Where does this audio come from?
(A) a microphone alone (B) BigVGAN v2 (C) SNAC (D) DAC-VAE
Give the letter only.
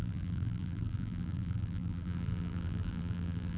B